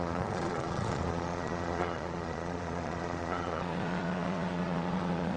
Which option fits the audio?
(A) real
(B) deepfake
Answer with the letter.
B